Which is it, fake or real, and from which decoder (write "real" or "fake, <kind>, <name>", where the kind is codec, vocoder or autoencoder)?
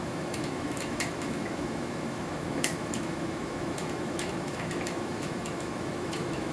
fake, autoencoder, DAC-VAE